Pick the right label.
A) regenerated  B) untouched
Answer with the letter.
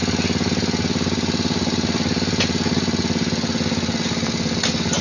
B